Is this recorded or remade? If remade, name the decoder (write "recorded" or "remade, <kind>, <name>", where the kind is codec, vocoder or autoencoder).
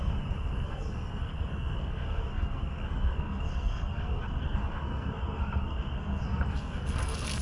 remade, codec, SNAC